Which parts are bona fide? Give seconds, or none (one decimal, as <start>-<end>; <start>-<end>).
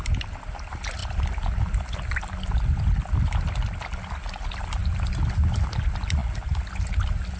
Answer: 0.0-7.4